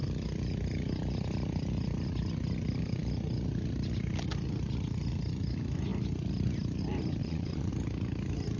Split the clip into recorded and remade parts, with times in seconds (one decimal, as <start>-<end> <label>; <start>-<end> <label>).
0.0-7.2 recorded; 7.2-7.7 remade; 7.7-8.6 recorded